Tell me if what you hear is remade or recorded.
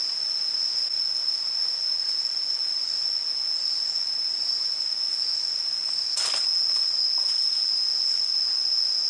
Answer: recorded